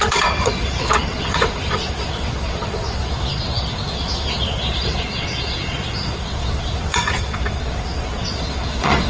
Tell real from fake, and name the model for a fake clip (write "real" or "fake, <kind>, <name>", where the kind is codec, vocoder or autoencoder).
fake, vocoder, WaveNeXt